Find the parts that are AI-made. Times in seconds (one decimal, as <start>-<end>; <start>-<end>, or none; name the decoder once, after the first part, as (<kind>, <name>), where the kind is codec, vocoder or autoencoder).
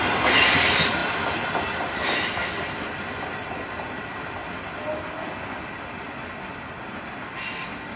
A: none